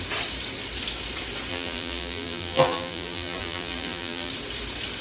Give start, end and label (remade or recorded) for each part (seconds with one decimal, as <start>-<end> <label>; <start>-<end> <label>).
0.0-1.5 recorded; 1.5-4.3 remade; 4.3-5.0 recorded